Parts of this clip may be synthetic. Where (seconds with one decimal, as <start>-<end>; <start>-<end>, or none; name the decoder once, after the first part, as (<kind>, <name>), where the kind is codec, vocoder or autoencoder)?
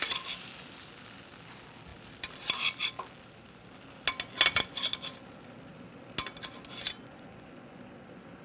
7.0-7.8 (vocoder, Vocos)